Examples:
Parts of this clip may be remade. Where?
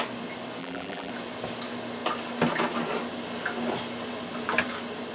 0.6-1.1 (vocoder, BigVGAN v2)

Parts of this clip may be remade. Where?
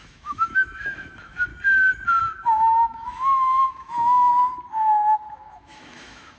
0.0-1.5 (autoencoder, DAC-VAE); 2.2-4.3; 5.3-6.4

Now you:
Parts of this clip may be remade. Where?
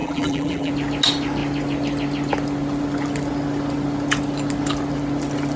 0.0-0.7 (vocoder, BigVGAN v2)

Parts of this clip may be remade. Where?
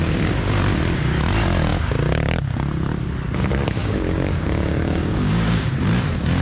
3.8-5.7 (codec, DAC)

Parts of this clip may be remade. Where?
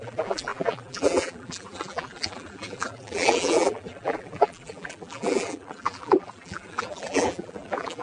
0.0-8.0 (vocoder, BigVGAN v2)